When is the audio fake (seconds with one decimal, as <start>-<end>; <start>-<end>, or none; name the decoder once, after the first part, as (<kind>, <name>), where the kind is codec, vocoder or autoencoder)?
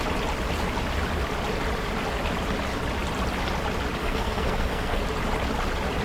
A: 4.0-5.0 (codec, SNAC)